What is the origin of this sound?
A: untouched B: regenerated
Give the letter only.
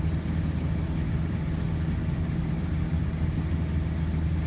A